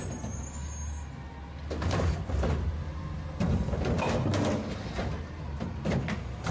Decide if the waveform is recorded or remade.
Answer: recorded